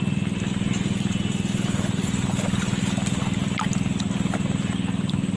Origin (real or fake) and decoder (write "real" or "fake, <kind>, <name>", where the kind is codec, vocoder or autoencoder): real